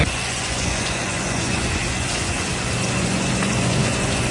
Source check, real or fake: fake